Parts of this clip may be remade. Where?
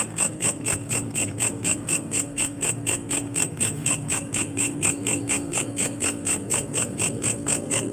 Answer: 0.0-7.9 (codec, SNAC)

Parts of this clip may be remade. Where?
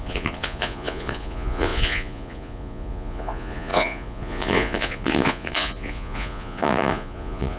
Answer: 0.0-7.6 (vocoder, Vocos)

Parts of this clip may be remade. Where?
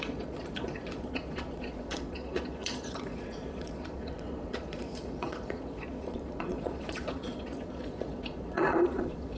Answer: 0.0-9.4 (vocoder, Vocos)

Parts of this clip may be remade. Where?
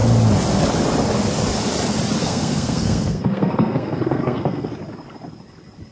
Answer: 2.2-4.7 (codec, SNAC)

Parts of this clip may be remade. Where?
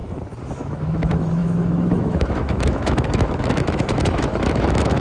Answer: 0.5-5.0 (autoencoder, DAC-VAE)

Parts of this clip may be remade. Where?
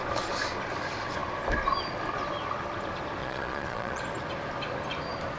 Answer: 3.2-4.0 (vocoder, Vocos)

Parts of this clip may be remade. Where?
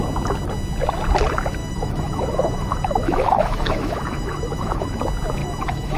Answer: 1.6-5.0 (autoencoder, DAC-VAE); 5.4-6.0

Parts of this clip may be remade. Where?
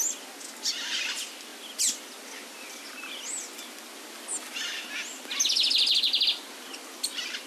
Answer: none